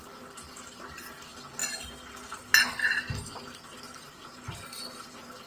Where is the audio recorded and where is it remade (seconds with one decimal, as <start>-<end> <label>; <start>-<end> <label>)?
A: 0.0-5.5 recorded